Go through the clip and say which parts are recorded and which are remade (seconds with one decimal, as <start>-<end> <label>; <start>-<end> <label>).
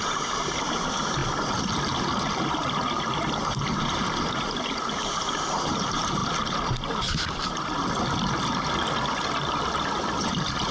0.0-1.2 remade; 1.2-2.2 recorded; 2.2-6.2 remade; 6.2-10.2 recorded; 10.2-10.7 remade